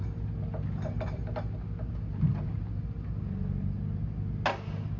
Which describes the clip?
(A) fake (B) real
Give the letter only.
B